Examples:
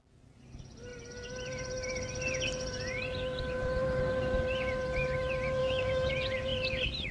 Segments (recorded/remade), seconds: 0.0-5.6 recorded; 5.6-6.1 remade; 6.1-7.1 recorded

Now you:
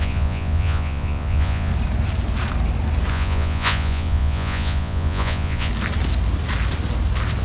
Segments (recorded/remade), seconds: 0.0-1.7 remade; 1.7-3.1 recorded; 3.1-5.7 remade; 5.7-7.4 recorded

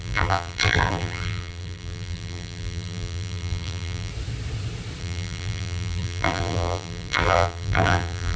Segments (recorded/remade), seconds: 0.0-4.1 remade; 4.1-5.0 recorded; 5.0-8.4 remade

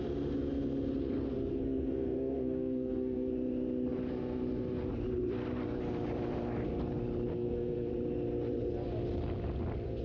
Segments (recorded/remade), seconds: 0.0-1.5 recorded; 1.5-3.3 remade; 3.3-7.3 recorded; 7.3-7.9 remade; 7.9-10.0 recorded

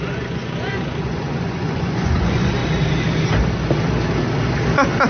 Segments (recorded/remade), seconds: 0.0-2.6 remade; 2.6-5.1 recorded

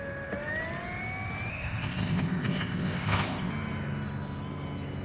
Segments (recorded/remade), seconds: 0.0-1.5 recorded; 1.5-3.5 remade; 3.5-5.0 recorded